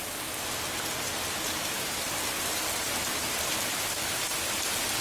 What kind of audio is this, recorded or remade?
recorded